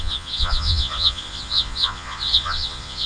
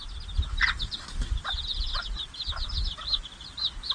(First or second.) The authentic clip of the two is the second